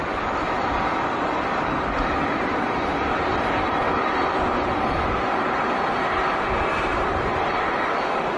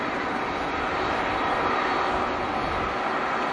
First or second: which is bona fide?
second